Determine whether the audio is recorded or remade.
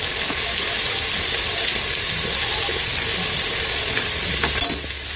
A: recorded